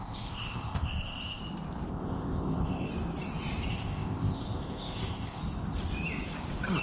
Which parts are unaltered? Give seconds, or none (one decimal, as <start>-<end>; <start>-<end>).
1.4-1.9; 2.9-3.7; 5.4-6.8